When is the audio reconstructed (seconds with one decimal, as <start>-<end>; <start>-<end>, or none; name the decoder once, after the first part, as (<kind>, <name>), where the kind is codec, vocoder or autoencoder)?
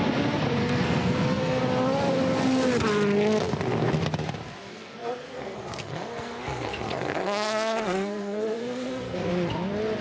0.6-1.6 (codec, SNAC); 4.6-9.3